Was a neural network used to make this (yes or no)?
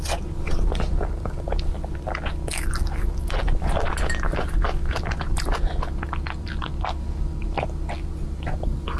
no